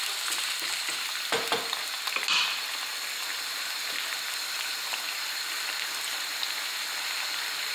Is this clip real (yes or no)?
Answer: yes